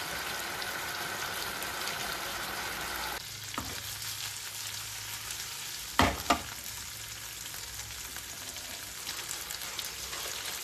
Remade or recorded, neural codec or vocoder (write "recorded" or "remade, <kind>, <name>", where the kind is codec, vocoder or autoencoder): recorded